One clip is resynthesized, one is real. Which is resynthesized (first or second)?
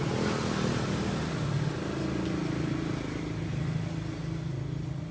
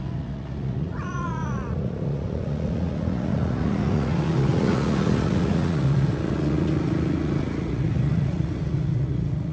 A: second